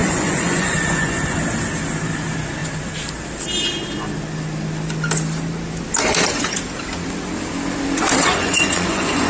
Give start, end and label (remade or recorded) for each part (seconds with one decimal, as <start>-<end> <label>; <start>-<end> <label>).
0.0-1.4 remade; 1.4-8.2 recorded; 8.2-9.3 remade

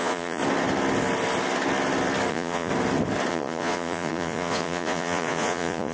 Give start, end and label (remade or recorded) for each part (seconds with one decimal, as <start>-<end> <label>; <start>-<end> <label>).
0.0-0.4 remade; 0.4-2.3 recorded; 2.3-2.7 remade; 2.7-3.3 recorded; 3.3-5.9 remade

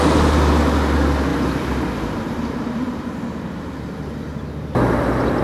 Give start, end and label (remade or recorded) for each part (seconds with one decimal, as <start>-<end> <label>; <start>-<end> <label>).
0.0-1.3 recorded; 1.3-4.5 remade; 4.5-5.4 recorded

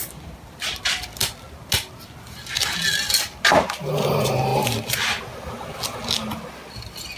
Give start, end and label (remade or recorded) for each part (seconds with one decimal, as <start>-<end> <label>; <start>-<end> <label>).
0.0-7.2 recorded

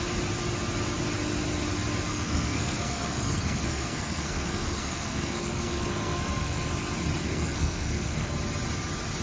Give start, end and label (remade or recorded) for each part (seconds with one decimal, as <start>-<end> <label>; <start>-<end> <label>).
0.0-2.1 recorded; 2.1-6.7 remade; 6.7-7.2 recorded; 7.2-8.3 remade; 8.3-9.2 recorded